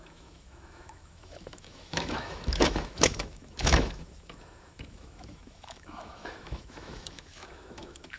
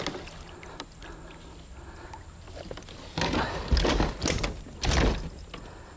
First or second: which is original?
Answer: second